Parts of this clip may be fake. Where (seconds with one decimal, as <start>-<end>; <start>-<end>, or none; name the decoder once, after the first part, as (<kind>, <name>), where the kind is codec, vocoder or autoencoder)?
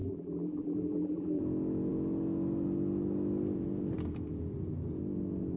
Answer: 0.0-1.4 (vocoder, BigVGAN v2)